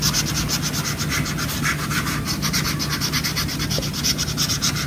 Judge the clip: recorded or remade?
recorded